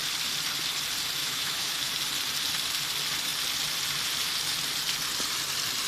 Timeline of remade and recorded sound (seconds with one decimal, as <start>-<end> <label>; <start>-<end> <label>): 0.0-1.2 recorded; 1.2-1.9 remade; 1.9-5.9 recorded